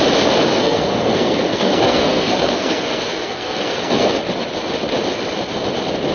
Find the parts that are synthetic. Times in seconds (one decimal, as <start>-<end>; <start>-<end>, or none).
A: 0.5-4.2